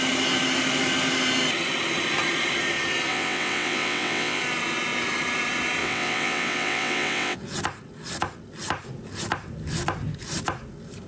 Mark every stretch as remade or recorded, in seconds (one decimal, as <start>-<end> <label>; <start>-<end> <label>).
0.0-3.1 recorded; 3.1-4.4 remade; 4.4-5.8 recorded; 5.8-7.4 remade; 7.4-11.1 recorded